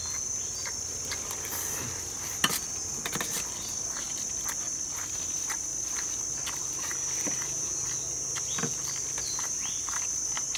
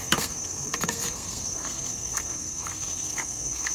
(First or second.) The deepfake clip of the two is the second